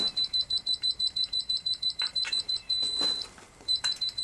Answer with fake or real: fake